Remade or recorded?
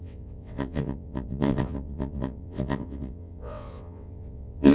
remade